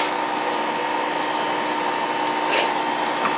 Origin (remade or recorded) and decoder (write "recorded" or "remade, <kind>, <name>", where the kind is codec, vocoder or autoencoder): recorded